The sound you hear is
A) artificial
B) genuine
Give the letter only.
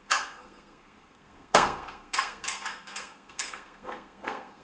A